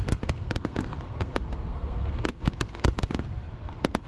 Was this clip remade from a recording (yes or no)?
yes